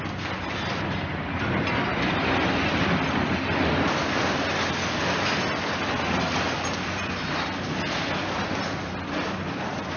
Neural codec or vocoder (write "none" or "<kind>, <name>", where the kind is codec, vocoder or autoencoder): none